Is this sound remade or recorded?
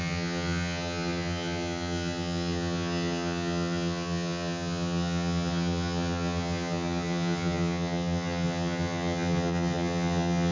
remade